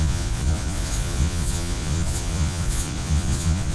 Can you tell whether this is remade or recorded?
remade